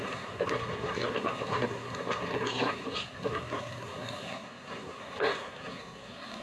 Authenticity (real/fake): fake